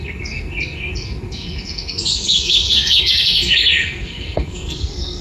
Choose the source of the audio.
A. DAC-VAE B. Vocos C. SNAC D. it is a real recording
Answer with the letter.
C